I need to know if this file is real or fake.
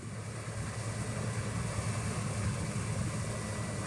real